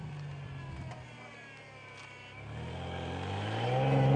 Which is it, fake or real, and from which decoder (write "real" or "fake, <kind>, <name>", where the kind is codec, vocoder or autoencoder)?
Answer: real